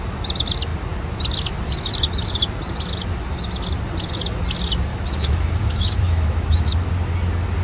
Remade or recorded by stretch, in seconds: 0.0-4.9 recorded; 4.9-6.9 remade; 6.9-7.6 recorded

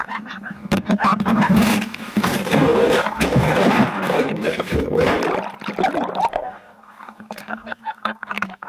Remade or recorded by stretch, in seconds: 0.0-5.2 remade; 5.2-6.3 recorded; 6.3-8.7 remade

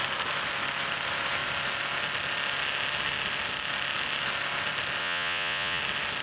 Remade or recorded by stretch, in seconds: 0.0-5.0 recorded; 5.0-5.8 remade; 5.8-6.2 recorded

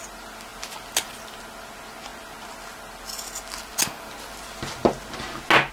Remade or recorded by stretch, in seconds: 0.0-5.7 recorded